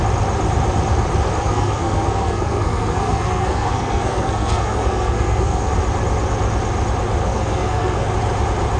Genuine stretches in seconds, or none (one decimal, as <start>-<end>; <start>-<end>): 0.0-1.4; 5.7-7.2; 8.1-8.8